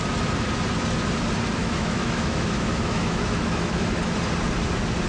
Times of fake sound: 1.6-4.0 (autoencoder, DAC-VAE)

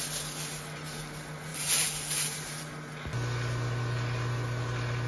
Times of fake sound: 1.5-2.6 (vocoder, BigVGAN v2)

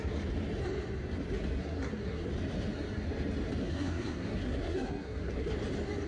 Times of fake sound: 1.6-2.3 (codec, SNAC); 3.6-5.5

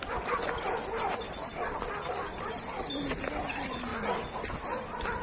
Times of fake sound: none